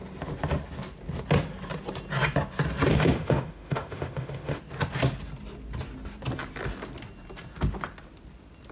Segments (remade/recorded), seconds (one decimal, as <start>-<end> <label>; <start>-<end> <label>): 0.0-2.9 recorded; 2.9-4.6 remade; 4.6-8.7 recorded